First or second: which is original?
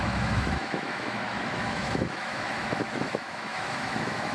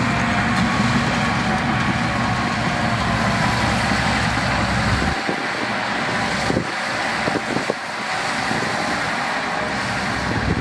second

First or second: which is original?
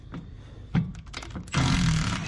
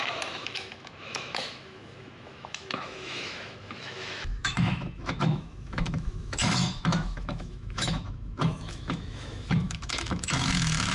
first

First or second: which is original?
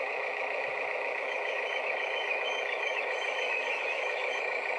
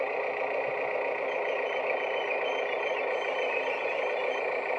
second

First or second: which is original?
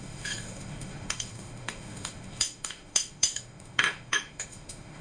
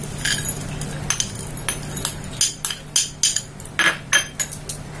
second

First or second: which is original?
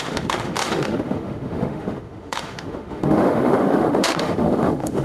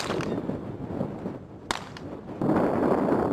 second